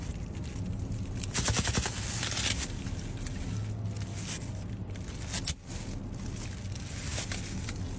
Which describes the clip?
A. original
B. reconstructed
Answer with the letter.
A